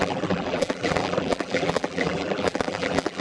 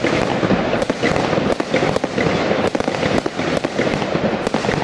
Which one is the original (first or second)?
second